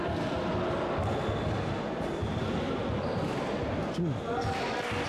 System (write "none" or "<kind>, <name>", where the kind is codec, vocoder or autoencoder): none